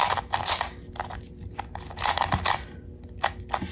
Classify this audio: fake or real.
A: real